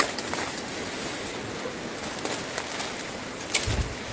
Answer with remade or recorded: recorded